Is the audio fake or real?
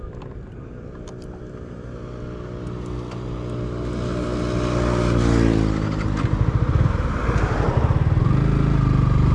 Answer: real